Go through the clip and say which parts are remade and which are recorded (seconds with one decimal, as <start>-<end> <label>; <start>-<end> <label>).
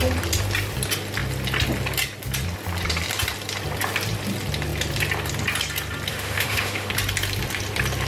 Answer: 0.0-6.1 recorded; 6.1-6.9 remade; 6.9-8.1 recorded